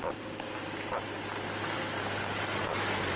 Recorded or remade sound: recorded